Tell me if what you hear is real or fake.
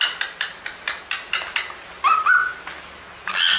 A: real